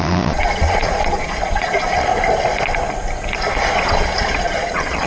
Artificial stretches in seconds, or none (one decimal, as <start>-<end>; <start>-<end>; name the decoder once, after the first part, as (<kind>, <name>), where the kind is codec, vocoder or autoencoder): 0.0-2.1 (vocoder, Vocos); 3.5-5.1